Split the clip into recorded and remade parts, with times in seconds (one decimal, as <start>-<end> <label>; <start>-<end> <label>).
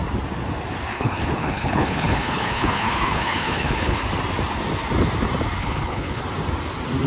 0.0-0.9 recorded; 0.9-4.0 remade; 4.0-5.6 recorded; 5.6-6.2 remade; 6.2-7.1 recorded